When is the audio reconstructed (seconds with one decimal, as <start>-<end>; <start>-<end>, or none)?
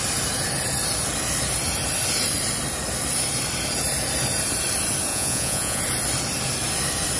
5.1-5.8